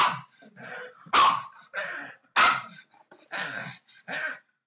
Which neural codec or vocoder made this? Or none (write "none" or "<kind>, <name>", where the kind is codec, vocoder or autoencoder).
none